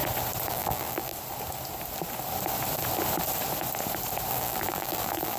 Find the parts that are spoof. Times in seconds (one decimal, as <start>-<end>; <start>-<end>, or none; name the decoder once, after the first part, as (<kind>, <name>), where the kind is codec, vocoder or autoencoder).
0.5-1.1 (vocoder, BigVGAN v2); 4.3-5.4